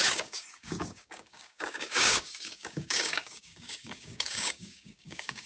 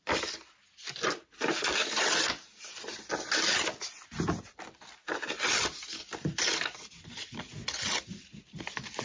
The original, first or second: second